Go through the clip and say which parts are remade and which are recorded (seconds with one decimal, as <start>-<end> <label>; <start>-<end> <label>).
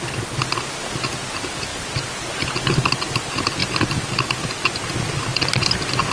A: 0.0-6.1 recorded